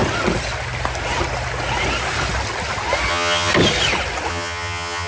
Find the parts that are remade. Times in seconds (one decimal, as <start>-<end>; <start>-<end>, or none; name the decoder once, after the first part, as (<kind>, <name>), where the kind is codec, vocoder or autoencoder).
3.1-3.5 (vocoder, HiFi-GAN); 4.3-5.1